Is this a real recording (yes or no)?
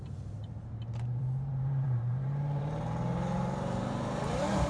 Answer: no